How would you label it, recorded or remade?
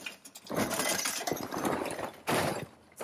recorded